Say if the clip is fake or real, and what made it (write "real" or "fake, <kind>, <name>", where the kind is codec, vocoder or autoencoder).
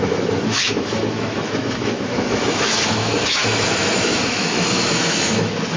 fake, autoencoder, DAC-VAE